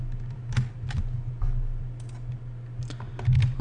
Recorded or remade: recorded